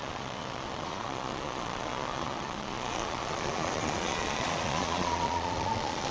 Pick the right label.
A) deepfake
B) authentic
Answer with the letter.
A